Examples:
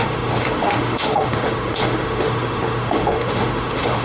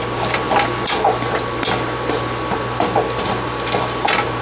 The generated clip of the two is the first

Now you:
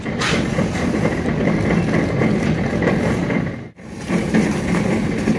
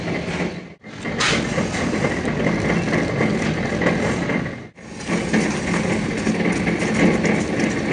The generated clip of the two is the first